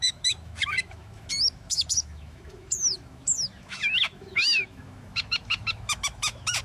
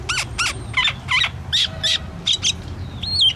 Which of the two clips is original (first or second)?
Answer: second